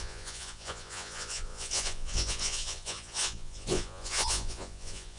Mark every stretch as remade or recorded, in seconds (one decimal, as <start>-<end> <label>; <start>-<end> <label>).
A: 0.0-5.2 remade